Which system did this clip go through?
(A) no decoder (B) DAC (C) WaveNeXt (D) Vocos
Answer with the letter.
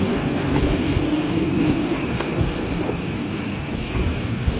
B